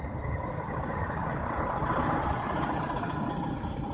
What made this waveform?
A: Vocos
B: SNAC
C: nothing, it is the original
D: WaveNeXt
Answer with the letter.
C